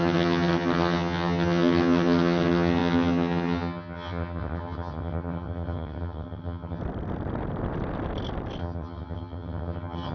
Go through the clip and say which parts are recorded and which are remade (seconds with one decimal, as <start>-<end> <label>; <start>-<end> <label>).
0.0-6.8 remade; 6.8-8.6 recorded; 8.6-10.1 remade